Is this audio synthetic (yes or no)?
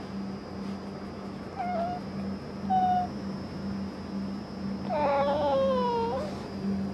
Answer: no